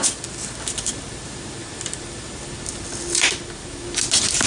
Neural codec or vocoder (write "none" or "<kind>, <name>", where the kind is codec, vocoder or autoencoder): none